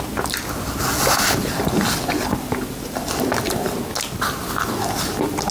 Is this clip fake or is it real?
real